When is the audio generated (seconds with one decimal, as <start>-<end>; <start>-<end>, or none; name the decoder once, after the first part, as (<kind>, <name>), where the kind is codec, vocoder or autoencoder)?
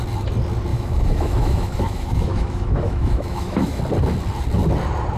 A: 0.7-3.8 (autoencoder, DAC-VAE)